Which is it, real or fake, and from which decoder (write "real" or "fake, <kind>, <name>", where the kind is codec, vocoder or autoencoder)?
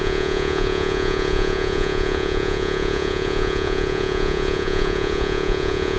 fake, vocoder, Vocos